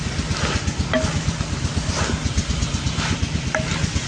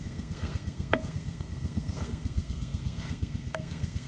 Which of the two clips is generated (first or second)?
second